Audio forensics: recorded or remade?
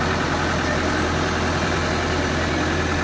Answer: remade